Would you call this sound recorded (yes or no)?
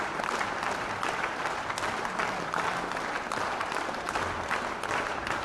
yes